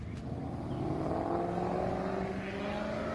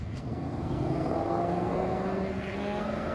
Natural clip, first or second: first